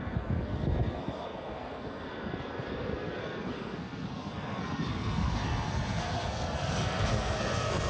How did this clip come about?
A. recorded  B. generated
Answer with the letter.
B